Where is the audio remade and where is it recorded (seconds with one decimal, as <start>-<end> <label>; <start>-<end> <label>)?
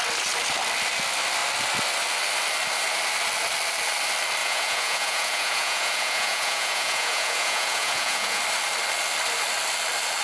0.0-4.4 recorded; 4.4-8.4 remade; 8.4-10.2 recorded